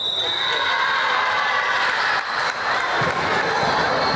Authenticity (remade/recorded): recorded